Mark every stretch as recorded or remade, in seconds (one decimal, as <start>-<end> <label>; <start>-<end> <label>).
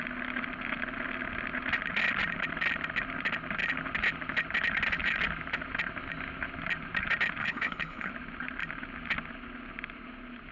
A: 0.0-7.4 recorded; 7.4-8.1 remade; 8.1-10.5 recorded